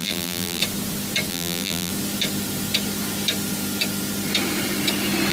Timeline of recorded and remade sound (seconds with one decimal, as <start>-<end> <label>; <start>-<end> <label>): 0.0-0.6 remade; 0.6-1.3 recorded; 1.3-1.9 remade; 1.9-5.3 recorded